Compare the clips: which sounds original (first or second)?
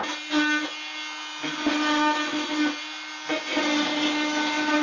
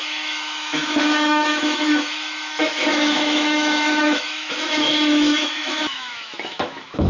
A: first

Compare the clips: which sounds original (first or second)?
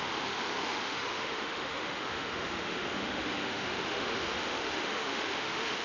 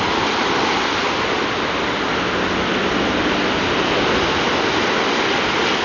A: second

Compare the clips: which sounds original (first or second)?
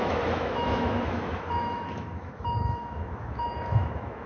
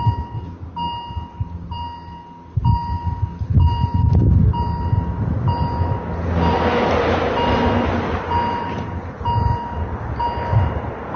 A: second